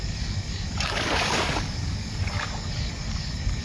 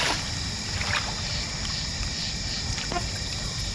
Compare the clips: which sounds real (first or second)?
second